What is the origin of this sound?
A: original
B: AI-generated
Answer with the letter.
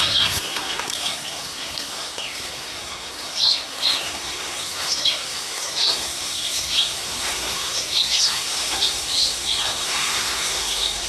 B